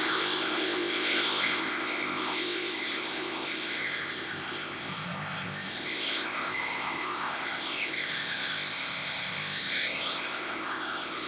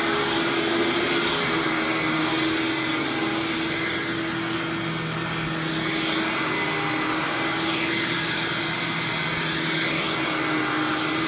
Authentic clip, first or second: second